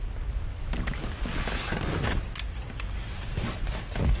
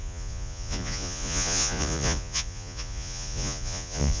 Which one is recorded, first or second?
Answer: first